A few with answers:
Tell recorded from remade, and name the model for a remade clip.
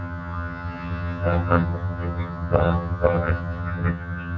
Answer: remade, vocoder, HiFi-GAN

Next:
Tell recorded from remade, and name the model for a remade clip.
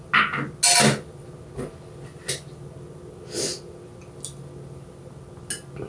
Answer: recorded